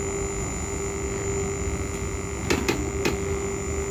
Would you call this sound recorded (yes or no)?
yes